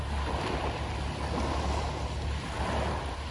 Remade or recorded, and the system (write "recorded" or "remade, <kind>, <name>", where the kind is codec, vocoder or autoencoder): recorded